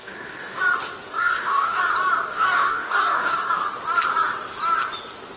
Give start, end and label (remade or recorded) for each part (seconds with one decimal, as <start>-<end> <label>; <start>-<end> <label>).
0.0-0.6 remade; 0.6-1.1 recorded; 1.1-1.8 remade; 1.8-2.3 recorded; 2.3-3.5 remade; 3.5-5.4 recorded